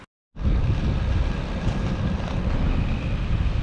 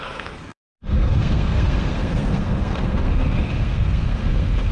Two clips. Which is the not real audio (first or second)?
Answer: second